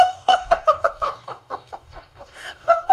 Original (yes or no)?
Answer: no